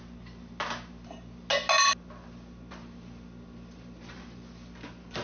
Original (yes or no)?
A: yes